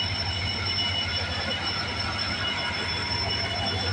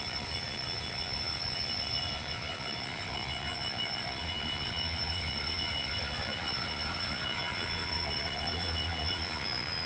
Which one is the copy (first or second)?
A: second